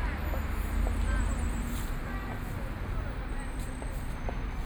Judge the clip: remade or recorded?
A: recorded